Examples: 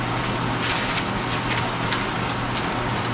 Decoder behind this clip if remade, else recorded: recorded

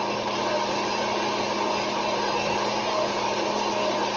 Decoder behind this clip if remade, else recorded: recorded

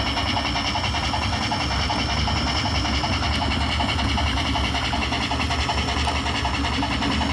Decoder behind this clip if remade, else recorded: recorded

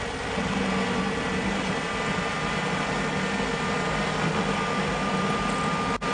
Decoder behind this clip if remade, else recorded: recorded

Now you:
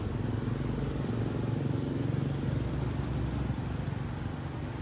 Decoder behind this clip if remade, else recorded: recorded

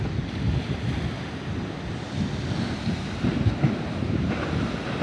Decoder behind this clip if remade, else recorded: recorded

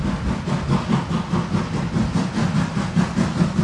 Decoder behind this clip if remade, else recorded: recorded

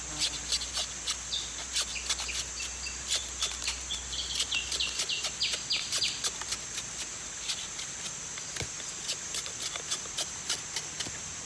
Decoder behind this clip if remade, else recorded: recorded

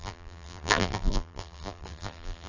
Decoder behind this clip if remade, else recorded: remade, vocoder, BigVGAN v2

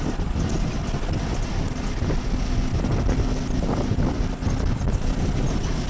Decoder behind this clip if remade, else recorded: recorded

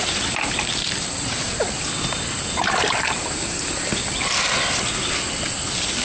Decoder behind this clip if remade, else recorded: recorded